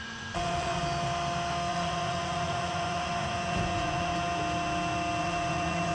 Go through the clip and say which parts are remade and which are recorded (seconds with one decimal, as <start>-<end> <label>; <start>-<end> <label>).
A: 0.0-0.8 remade; 0.8-1.7 recorded; 1.7-4.1 remade; 4.1-5.2 recorded; 5.2-5.9 remade